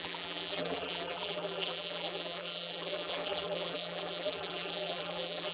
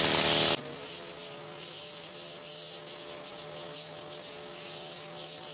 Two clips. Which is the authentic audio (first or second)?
second